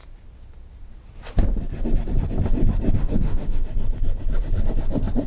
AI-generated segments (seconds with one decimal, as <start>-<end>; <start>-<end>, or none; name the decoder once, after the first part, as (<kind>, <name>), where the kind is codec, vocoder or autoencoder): 3.0-3.7 (autoencoder, DAC-VAE)